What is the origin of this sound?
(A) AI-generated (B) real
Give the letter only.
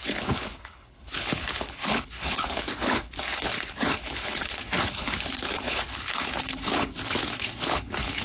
A